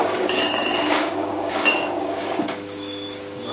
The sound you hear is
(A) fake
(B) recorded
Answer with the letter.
A